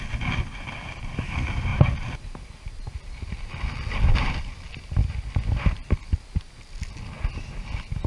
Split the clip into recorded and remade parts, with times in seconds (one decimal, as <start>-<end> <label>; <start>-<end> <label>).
0.0-1.7 recorded; 1.7-3.3 remade; 3.3-8.1 recorded

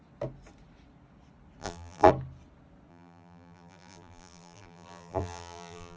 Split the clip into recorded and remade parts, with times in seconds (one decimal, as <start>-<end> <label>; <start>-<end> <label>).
0.0-1.6 recorded; 1.6-2.1 remade; 2.1-2.9 recorded; 2.9-6.0 remade